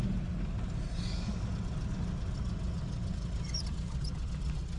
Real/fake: real